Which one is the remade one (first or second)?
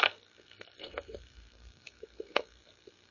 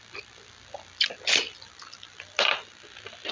first